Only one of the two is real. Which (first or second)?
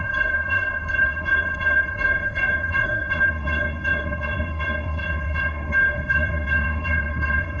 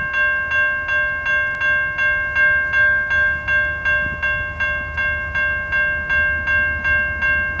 second